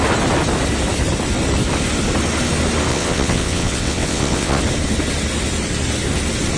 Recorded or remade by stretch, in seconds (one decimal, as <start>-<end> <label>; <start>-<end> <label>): 0.0-2.9 recorded; 2.9-4.6 remade; 4.6-6.6 recorded